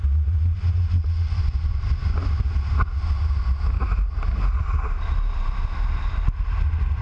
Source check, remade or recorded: recorded